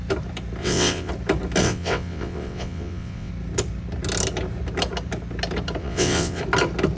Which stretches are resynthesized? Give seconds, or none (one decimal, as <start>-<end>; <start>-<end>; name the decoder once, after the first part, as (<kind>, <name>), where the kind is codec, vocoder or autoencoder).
0.6-1.1 (vocoder, WaveNeXt); 1.6-3.3; 5.8-6.4